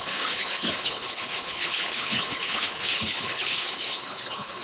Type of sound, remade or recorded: remade